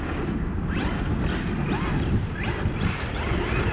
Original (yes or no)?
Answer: yes